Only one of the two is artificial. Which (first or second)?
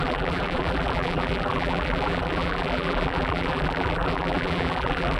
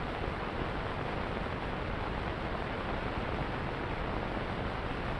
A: first